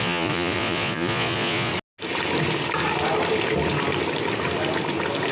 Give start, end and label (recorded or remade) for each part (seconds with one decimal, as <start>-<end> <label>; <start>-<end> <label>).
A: 0.0-1.7 remade; 1.7-5.3 recorded